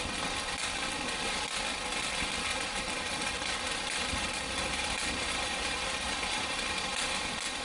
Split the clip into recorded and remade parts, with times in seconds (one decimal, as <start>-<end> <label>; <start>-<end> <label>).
0.0-2.5 recorded; 2.5-7.1 remade; 7.1-7.6 recorded